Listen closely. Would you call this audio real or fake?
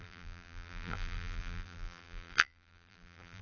fake